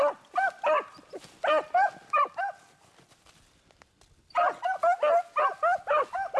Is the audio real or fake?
real